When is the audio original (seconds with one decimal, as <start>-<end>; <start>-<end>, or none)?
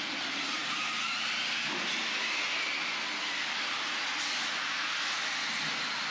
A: 0.0-6.1